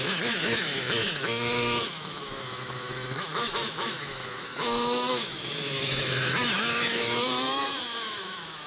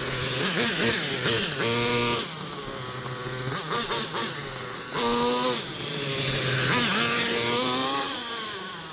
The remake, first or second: first